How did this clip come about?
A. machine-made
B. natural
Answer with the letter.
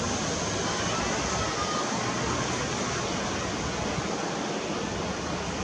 B